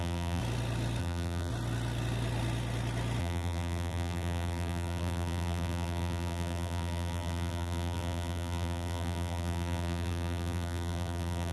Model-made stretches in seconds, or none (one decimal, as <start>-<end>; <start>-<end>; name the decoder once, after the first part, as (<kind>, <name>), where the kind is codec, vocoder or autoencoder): 0.0-0.4 (vocoder, BigVGAN v2); 1.0-1.5; 3.2-11.5